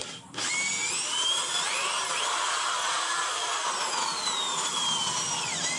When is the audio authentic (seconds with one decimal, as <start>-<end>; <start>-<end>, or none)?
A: 0.0-5.8